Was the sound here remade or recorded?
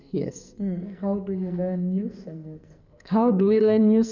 remade